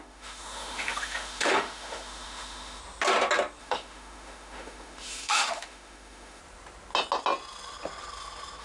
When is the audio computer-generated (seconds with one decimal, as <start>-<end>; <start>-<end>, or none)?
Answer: 0.0-2.8; 3.6-6.4